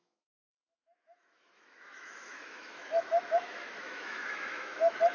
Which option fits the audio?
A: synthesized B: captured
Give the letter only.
A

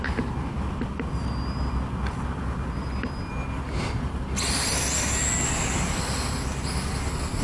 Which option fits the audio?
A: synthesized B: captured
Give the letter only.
B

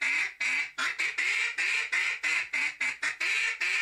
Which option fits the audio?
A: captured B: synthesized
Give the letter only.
A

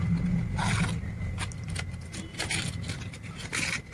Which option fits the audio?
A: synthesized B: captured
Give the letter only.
B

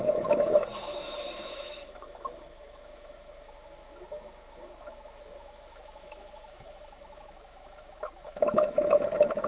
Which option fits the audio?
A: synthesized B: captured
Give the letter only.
A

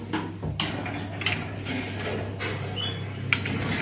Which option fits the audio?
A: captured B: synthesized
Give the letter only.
A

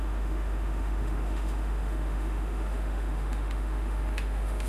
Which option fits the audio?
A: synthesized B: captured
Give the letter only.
A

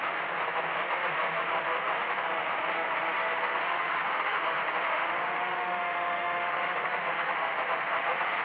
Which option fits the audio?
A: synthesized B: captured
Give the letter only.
A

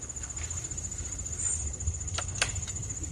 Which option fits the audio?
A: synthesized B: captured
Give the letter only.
B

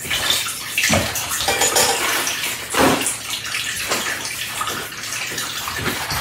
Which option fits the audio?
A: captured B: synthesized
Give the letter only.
A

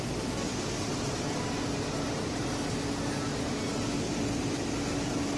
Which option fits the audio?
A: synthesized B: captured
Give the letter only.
B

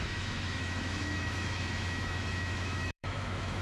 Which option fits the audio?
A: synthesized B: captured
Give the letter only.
A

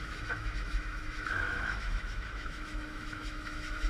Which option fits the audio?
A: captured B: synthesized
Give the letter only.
B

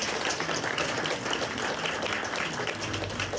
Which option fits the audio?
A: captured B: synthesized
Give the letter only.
A